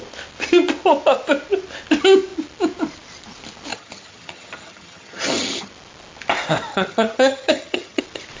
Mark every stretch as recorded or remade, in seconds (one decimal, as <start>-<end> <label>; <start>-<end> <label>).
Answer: 0.0-3.7 recorded; 3.7-5.7 remade; 5.7-6.7 recorded; 6.7-8.0 remade; 8.0-8.4 recorded